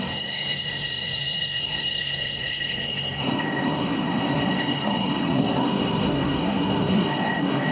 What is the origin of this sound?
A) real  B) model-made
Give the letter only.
B